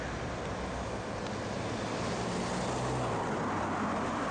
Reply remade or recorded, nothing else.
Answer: recorded